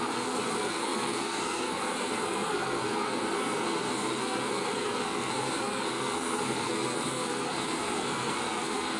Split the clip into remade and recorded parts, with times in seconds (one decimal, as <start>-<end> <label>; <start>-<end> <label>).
0.0-9.0 remade

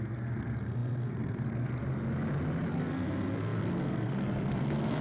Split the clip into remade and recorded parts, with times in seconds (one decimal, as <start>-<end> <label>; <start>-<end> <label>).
0.0-1.8 remade; 1.8-2.7 recorded; 2.7-5.0 remade

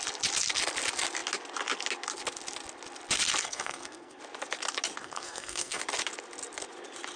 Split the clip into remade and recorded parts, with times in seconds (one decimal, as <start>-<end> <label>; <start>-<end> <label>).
0.0-3.4 recorded; 3.4-4.2 remade; 4.2-5.0 recorded; 5.0-5.8 remade; 5.8-7.2 recorded